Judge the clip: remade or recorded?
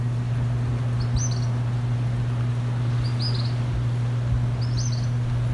recorded